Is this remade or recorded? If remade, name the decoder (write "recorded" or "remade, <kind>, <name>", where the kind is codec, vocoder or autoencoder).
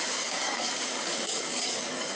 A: remade, codec, DAC